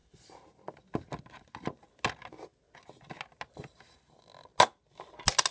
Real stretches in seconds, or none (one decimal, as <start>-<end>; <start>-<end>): 0.0-5.5